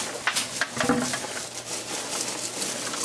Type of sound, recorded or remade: recorded